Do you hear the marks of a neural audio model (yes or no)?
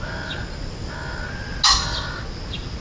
no